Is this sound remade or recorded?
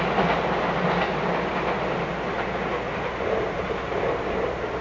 recorded